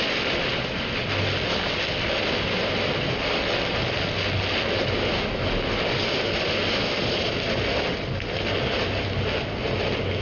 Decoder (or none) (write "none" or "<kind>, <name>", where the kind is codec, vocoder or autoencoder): none